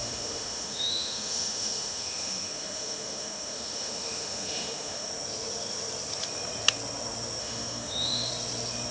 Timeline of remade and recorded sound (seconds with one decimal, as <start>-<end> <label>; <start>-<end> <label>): 0.0-5.1 remade; 5.1-7.4 recorded; 7.4-8.3 remade; 8.3-8.9 recorded